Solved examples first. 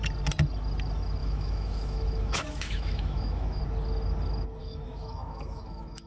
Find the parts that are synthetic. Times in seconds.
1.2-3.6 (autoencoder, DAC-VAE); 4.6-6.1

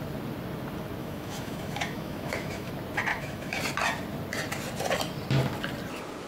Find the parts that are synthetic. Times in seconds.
1.0-2.7 (autoencoder, DAC-VAE); 3.1-3.6

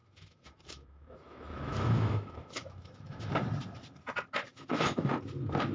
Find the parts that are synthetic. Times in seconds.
0.0-3.3 (autoencoder, DAC-VAE); 4.5-5.1

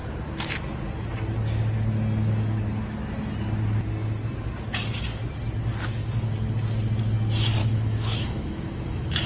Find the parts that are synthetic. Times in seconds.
7.6-9.3 (autoencoder, DAC-VAE)

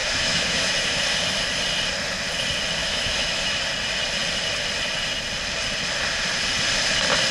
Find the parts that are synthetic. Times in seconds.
0.0-1.0 (autoencoder, DAC-VAE); 2.8-3.6

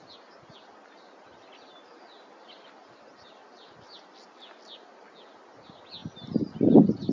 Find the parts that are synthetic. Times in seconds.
none

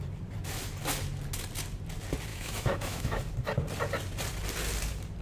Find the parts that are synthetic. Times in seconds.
2.3-3.2 (autoencoder, DAC-VAE)